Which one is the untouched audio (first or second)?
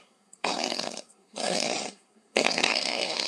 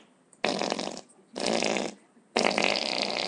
second